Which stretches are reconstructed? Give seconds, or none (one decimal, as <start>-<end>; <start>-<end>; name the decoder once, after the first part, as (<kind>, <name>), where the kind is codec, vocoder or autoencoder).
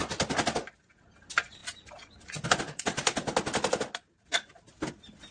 none